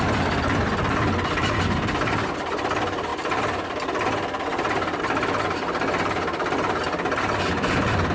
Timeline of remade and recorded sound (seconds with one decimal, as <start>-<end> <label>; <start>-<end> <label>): 0.0-8.1 recorded

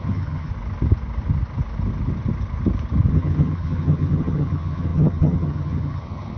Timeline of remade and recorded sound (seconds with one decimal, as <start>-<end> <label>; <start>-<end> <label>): 0.0-0.5 remade; 0.5-3.1 recorded; 3.1-6.4 remade

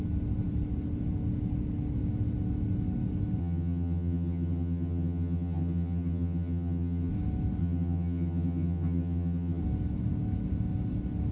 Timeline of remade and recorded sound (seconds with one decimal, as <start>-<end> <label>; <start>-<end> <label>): 0.0-3.4 recorded; 3.4-7.1 remade; 7.1-7.6 recorded; 7.6-9.6 remade; 9.6-11.3 recorded

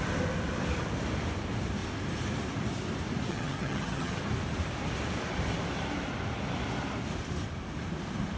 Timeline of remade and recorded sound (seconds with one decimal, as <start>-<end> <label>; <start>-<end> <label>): 0.0-3.3 recorded; 3.3-4.2 remade; 4.2-8.4 recorded